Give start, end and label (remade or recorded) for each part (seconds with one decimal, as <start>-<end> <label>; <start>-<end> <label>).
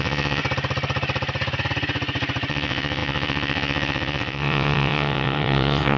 0.0-0.4 remade; 0.4-2.5 recorded; 2.5-6.0 remade